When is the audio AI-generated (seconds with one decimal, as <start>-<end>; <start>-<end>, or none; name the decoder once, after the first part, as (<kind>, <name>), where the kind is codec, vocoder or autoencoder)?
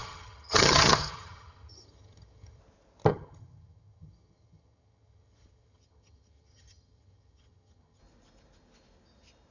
0.0-2.6 (vocoder, HiFi-GAN); 3.1-8.0